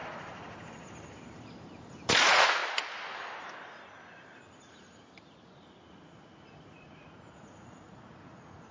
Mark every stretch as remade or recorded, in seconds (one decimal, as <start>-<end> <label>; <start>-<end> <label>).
0.0-2.1 recorded; 2.1-2.6 remade; 2.6-5.9 recorded; 5.9-8.7 remade